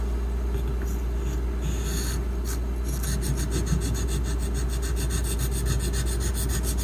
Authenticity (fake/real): real